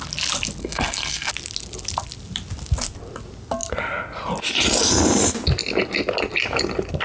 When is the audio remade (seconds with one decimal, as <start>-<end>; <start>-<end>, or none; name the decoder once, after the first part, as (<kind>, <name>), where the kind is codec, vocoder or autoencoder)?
0.6-1.3 (codec, SNAC)